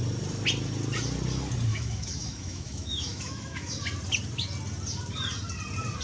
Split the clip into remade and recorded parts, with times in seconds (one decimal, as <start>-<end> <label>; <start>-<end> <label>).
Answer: 0.0-1.7 recorded; 1.7-3.7 remade; 3.7-6.0 recorded